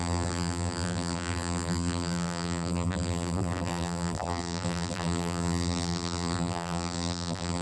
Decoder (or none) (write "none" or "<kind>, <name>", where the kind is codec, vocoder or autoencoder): vocoder, BigVGAN v2